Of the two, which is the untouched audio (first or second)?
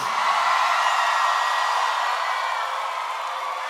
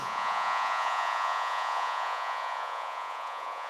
first